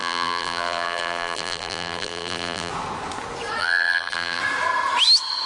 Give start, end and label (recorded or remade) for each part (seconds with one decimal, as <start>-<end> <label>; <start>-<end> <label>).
0.0-2.7 remade; 2.7-3.6 recorded; 3.6-4.4 remade; 4.4-5.5 recorded